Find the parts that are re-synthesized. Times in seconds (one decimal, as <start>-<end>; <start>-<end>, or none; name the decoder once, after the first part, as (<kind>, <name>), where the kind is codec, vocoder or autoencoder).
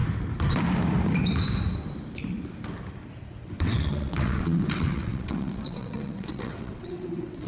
3.6-7.5 (vocoder, WaveNeXt)